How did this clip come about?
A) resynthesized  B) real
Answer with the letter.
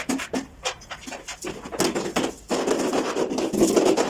B